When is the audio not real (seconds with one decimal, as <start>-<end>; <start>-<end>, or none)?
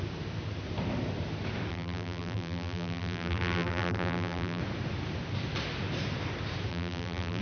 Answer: 1.7-4.6; 6.7-7.4